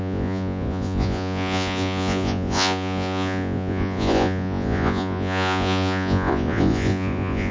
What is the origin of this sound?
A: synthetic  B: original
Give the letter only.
A